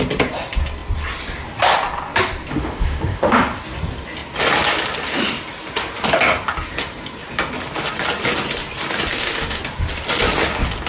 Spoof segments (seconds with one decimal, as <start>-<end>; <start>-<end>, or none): 2.5-3.4; 9.1-9.6